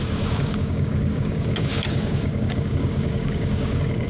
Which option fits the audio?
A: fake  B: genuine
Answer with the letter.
A